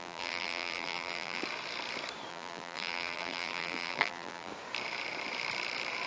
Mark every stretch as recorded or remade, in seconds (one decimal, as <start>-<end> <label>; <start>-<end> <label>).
0.0-1.4 remade; 1.4-2.3 recorded; 2.3-4.5 remade; 4.5-6.1 recorded